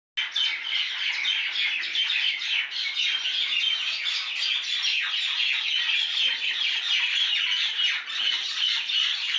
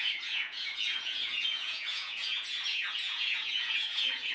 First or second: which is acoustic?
first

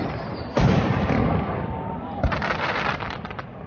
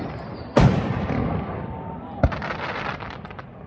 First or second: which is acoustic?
second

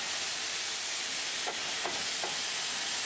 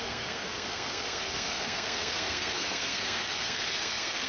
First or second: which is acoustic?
first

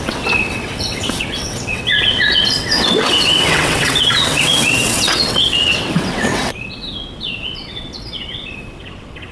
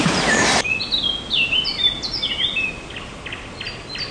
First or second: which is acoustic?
second